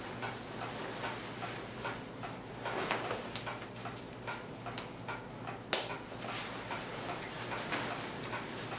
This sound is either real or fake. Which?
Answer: real